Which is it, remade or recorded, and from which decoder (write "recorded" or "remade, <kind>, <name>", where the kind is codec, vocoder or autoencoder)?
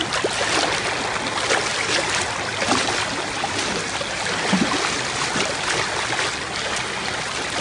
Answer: recorded